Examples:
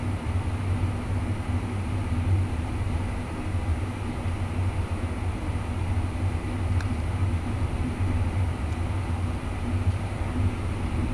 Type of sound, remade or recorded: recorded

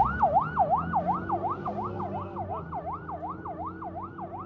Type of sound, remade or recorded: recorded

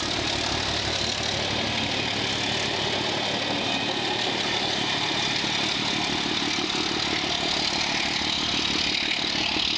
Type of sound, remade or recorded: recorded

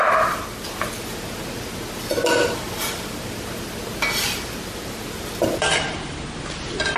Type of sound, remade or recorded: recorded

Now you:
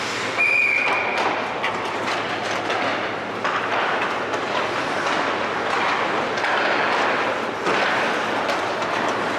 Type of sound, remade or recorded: recorded